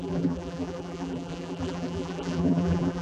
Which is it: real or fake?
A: fake